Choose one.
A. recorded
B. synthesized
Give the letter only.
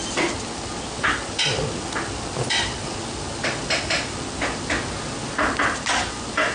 A